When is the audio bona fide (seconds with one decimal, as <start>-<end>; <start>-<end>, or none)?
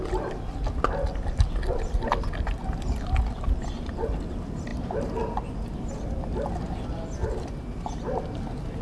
0.0-8.8